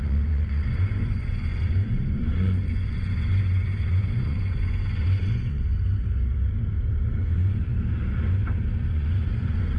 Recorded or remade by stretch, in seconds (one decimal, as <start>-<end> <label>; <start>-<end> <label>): 0.0-5.7 remade; 5.7-7.1 recorded; 7.1-7.7 remade; 7.7-8.9 recorded; 8.9-9.8 remade